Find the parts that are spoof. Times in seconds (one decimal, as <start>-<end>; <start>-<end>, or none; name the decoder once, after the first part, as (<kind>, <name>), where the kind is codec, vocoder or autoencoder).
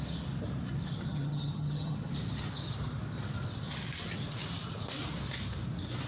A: 1.1-2.1 (vocoder, HiFi-GAN)